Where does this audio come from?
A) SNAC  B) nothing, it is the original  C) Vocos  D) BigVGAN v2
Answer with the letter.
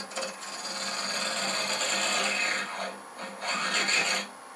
B